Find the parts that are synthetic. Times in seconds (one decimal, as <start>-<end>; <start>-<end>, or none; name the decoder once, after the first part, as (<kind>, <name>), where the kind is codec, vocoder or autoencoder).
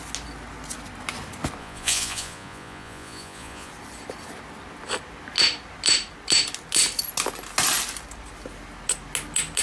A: 1.6-3.7 (vocoder, Vocos)